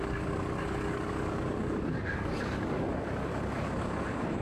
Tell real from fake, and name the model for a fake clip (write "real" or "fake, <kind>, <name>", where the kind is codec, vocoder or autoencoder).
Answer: fake, codec, DAC